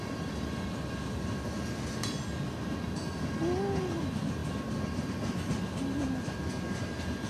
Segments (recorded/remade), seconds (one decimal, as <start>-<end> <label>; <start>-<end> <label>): 0.0-7.3 recorded